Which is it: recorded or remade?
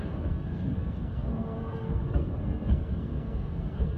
remade